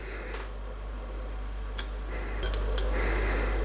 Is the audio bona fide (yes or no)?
yes